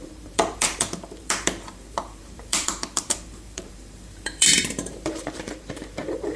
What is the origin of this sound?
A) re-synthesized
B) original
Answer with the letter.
A